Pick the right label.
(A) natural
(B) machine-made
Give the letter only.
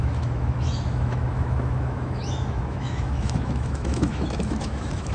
B